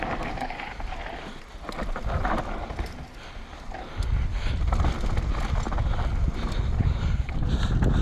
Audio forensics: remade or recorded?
recorded